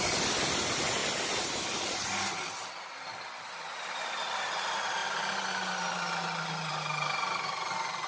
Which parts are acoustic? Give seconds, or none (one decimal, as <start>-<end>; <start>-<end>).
0.0-8.1